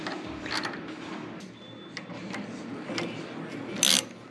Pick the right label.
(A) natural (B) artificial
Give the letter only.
A